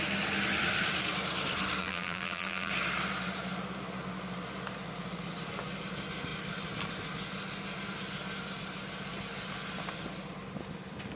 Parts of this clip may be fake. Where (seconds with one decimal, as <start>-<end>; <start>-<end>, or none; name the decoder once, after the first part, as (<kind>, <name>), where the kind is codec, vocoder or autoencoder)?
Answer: 1.8-2.7 (vocoder, BigVGAN v2)